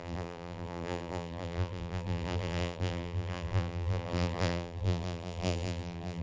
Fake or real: fake